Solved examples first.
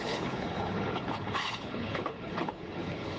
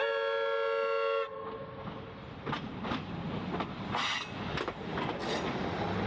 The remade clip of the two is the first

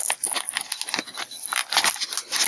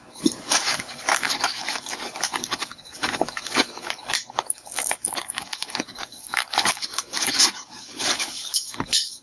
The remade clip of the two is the second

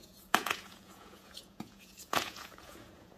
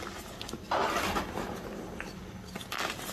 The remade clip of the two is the first